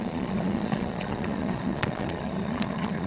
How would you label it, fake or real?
fake